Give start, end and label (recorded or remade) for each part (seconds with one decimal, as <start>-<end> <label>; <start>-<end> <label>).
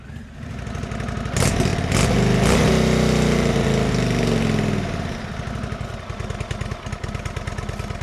0.0-8.0 recorded